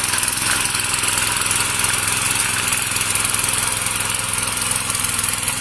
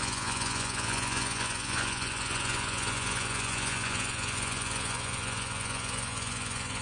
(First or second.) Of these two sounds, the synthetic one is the second